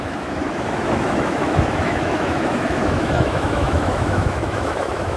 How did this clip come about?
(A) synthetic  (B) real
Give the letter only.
A